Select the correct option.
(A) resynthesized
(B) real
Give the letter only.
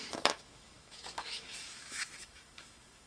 A